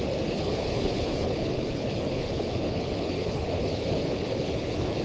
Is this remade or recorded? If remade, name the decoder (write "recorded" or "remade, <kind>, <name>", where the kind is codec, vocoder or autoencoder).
remade, codec, HILCodec